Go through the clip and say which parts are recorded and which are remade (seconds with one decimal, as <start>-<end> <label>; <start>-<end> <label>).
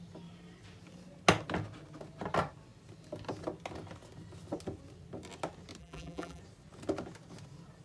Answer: 0.0-5.8 recorded; 5.8-6.4 remade; 6.4-7.8 recorded